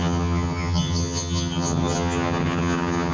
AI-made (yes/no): yes